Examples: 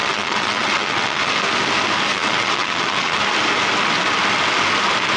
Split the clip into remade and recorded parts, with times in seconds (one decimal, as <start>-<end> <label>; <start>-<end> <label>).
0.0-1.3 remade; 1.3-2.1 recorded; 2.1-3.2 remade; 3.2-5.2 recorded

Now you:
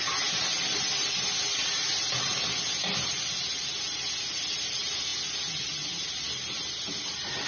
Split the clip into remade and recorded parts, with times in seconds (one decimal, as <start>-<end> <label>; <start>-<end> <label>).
0.0-7.5 recorded

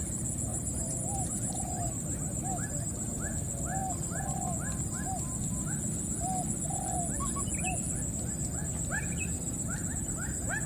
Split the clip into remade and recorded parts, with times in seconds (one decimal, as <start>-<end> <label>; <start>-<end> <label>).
0.0-0.5 recorded; 0.5-3.2 remade; 3.2-10.7 recorded

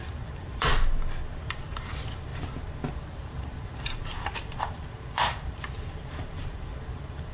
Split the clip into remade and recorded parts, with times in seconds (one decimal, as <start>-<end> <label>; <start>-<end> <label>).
0.0-0.7 remade; 0.7-1.3 recorded; 1.3-2.3 remade; 2.3-2.9 recorded; 2.9-7.3 remade